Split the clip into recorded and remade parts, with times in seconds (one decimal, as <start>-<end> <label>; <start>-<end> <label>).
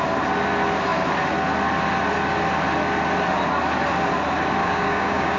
0.0-4.6 recorded; 4.6-5.4 remade